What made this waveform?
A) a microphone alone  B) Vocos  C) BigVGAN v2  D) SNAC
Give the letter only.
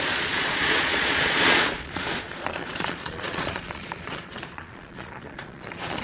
B